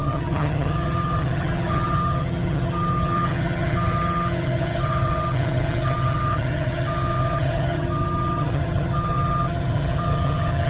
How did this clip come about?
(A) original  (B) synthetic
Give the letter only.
B